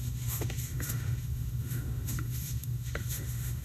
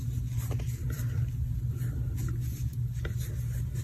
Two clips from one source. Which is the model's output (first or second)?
first